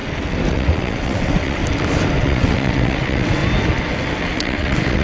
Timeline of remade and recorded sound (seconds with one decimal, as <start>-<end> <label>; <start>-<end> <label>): 0.0-0.5 recorded; 0.5-1.6 remade; 1.6-2.2 recorded; 2.2-3.4 remade; 3.4-4.2 recorded; 4.2-5.0 remade